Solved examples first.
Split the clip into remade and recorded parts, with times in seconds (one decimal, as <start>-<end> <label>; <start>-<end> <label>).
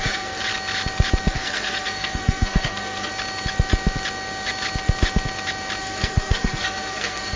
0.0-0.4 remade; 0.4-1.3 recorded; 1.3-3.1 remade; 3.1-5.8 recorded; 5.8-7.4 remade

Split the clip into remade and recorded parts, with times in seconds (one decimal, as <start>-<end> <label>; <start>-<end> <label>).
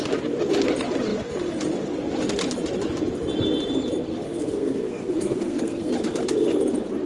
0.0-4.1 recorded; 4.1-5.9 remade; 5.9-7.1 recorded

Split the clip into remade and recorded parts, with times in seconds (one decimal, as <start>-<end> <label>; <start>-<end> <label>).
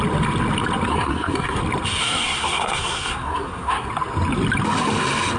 0.0-0.9 recorded; 0.9-1.6 remade; 1.6-2.0 recorded; 2.0-3.9 remade; 3.9-5.4 recorded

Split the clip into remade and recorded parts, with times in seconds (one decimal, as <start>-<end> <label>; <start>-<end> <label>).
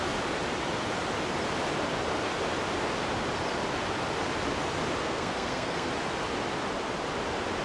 0.0-5.0 recorded; 5.0-5.9 remade; 5.9-7.6 recorded